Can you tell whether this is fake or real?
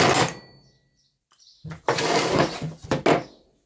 real